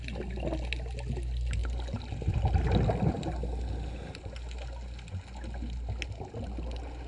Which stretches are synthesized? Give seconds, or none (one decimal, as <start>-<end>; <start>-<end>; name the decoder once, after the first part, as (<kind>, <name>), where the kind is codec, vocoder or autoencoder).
none